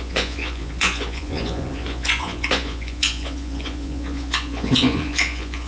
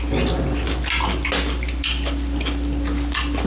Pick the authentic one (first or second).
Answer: second